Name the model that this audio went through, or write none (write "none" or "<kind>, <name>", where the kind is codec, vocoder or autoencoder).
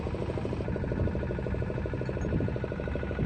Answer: none